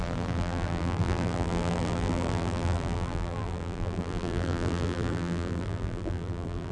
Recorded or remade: remade